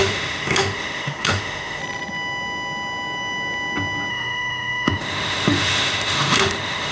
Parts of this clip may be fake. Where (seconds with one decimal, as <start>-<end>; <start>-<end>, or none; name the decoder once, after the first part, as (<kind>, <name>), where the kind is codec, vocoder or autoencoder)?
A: 0.0-1.8 (autoencoder, DAC-VAE); 4.1-6.9